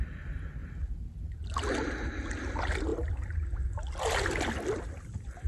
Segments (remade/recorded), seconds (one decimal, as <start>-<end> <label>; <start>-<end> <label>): 0.0-5.5 recorded